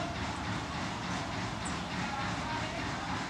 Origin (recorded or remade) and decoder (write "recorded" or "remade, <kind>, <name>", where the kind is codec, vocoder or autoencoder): recorded